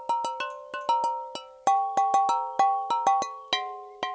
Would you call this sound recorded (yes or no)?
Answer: yes